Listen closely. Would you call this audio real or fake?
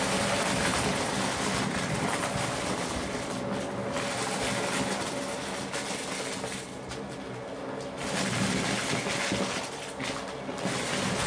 real